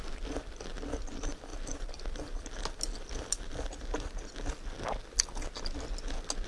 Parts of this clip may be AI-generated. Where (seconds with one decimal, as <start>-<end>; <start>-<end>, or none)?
none